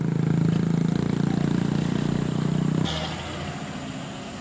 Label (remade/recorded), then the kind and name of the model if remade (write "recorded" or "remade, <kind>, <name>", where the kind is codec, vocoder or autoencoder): recorded